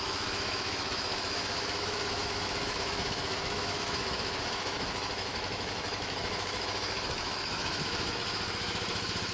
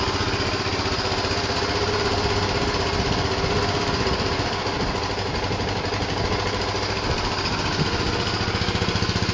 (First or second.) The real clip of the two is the second